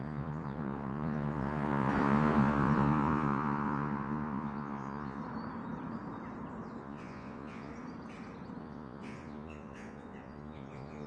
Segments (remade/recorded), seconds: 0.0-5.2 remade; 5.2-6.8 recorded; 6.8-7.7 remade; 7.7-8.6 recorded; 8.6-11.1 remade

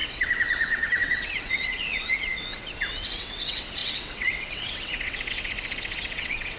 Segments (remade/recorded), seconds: 0.0-6.6 remade